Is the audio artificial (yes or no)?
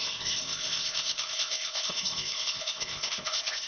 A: yes